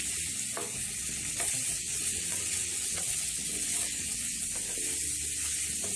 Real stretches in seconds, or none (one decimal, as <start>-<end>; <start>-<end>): 0.0-0.8; 4.4-6.0